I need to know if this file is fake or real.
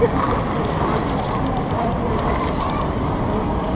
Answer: fake